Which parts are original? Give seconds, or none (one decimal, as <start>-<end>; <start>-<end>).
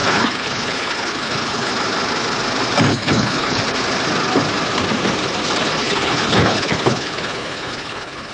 1.7-2.9; 3.6-5.8